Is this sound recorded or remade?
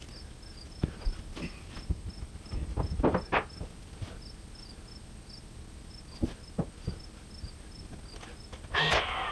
recorded